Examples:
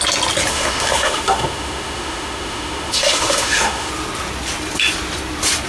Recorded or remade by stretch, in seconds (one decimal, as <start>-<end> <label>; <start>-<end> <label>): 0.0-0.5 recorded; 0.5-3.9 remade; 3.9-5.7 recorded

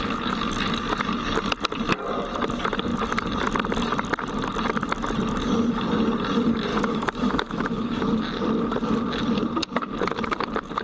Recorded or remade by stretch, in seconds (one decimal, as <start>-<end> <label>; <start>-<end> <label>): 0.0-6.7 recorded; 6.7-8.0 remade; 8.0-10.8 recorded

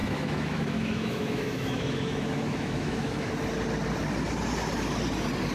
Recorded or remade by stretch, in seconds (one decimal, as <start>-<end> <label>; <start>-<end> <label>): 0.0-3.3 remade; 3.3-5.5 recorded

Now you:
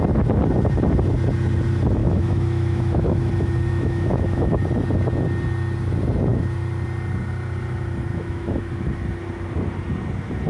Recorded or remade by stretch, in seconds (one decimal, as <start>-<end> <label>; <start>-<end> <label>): 0.0-2.0 recorded; 2.0-3.3 remade; 3.3-3.7 recorded; 3.7-4.6 remade; 4.6-8.1 recorded; 8.1-8.7 remade; 8.7-10.5 recorded